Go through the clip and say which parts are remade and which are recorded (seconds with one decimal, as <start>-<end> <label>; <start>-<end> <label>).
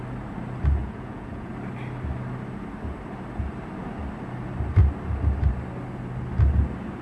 0.0-0.8 recorded; 0.8-1.5 remade; 1.5-7.0 recorded